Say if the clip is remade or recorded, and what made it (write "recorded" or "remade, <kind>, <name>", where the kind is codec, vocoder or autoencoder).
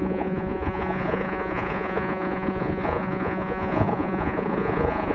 remade, vocoder, Vocos